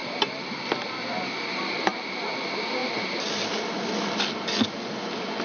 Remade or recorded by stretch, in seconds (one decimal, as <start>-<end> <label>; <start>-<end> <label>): 0.0-5.4 recorded